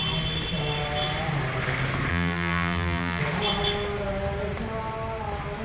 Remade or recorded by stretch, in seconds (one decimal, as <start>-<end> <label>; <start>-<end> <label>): 0.0-2.1 recorded; 2.1-3.2 remade; 3.2-5.6 recorded